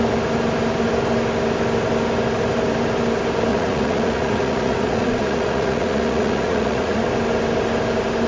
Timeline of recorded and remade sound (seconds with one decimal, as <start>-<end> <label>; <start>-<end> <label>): 0.0-3.5 recorded; 3.5-7.0 remade; 7.0-8.3 recorded